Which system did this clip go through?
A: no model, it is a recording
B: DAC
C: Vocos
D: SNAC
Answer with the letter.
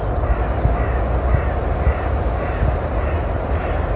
A